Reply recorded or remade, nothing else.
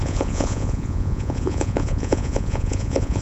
remade